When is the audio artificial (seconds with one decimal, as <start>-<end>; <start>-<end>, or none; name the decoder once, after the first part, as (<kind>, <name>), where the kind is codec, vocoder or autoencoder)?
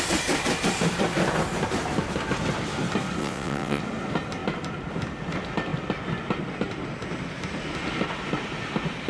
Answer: 3.2-3.8 (vocoder, WaveNeXt)